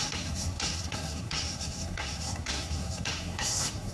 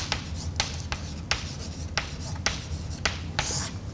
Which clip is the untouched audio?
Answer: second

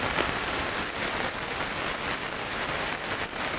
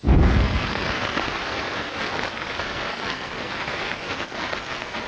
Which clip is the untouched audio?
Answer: first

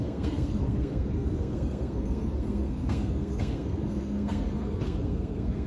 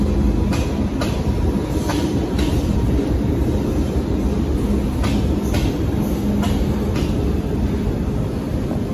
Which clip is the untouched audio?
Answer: second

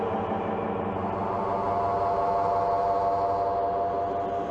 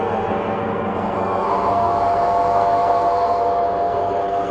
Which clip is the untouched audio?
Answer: first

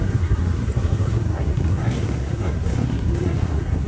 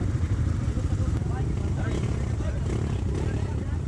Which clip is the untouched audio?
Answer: second